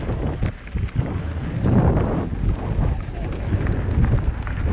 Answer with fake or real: real